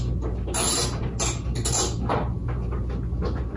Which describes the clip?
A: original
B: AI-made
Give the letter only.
A